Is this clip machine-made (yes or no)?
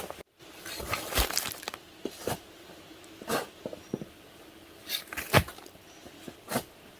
no